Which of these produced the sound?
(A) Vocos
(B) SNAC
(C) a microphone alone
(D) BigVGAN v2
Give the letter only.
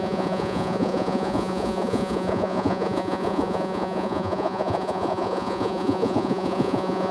A